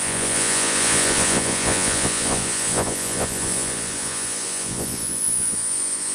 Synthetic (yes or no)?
yes